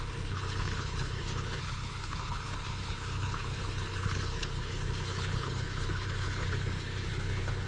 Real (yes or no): no